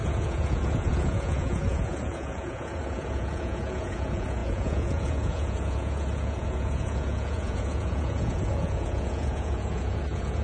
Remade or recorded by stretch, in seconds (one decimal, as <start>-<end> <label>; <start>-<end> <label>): 0.0-10.4 remade